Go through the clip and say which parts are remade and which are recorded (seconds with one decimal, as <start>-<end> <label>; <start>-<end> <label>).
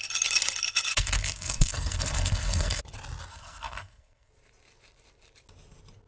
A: 0.0-0.9 recorded; 0.9-2.8 remade; 2.8-3.3 recorded; 3.3-4.3 remade; 4.3-6.1 recorded